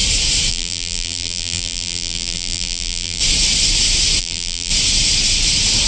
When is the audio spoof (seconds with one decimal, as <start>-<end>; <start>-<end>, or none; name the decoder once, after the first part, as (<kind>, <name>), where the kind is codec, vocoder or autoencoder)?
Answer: 0.5-3.2 (vocoder, BigVGAN v2); 4.2-4.7